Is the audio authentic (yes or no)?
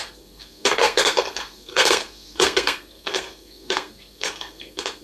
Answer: no